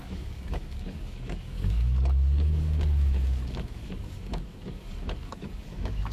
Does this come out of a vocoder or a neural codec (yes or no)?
yes